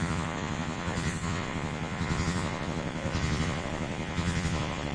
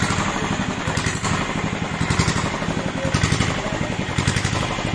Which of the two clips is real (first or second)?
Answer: second